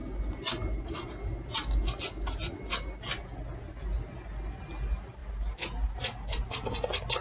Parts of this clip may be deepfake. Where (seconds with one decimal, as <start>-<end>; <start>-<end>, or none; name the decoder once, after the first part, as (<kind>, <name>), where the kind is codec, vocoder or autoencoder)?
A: none